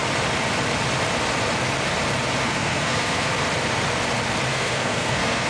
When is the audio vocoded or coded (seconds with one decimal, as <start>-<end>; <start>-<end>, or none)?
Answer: 2.4-3.3; 4.5-5.5